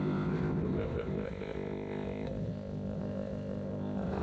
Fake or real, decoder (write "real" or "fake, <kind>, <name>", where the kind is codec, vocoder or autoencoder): fake, codec, ZipCodec